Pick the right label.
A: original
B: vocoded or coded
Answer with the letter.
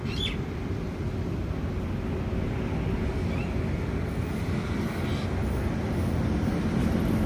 A